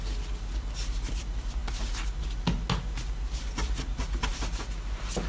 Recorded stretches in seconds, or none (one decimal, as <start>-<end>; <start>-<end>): 0.0-5.3